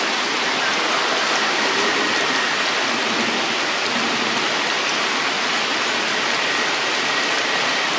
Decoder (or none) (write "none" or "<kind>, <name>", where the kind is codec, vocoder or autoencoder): none